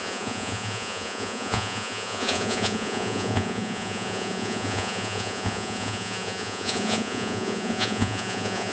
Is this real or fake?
fake